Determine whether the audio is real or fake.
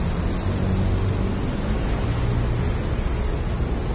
real